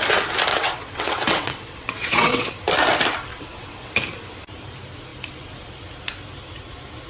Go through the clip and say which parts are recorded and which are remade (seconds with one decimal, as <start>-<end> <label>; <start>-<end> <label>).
0.0-0.5 recorded; 0.5-2.5 remade; 2.5-3.3 recorded; 3.3-3.9 remade; 3.9-7.1 recorded